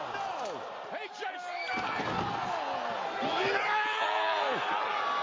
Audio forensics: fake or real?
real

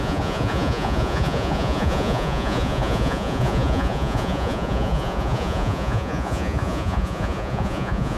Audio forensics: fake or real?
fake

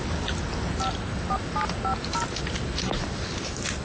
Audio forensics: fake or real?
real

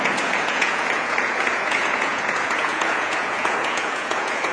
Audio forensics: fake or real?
fake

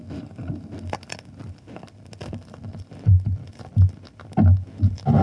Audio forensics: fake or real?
real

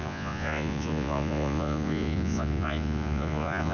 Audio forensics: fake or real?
fake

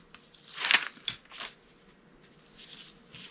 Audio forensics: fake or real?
real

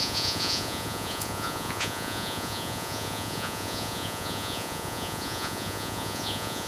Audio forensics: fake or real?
fake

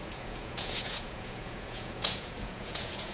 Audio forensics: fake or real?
fake